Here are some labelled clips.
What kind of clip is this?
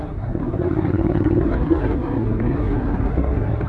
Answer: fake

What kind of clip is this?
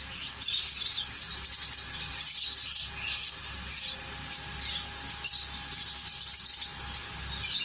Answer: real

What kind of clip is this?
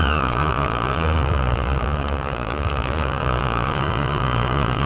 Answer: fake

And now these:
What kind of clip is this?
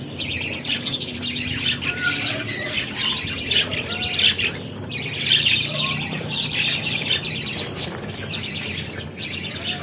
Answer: fake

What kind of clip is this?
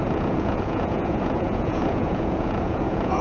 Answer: fake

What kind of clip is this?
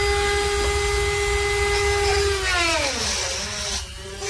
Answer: real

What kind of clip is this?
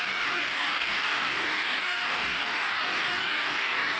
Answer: fake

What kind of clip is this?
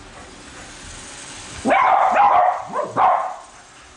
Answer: real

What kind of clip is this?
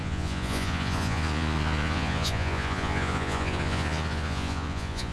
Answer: fake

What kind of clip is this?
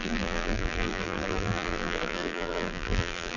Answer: fake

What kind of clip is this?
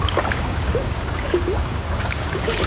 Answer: fake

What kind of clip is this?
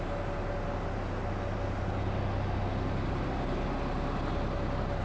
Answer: real